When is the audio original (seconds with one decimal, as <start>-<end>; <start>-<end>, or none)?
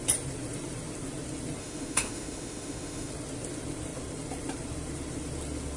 0.0-1.6; 3.1-5.8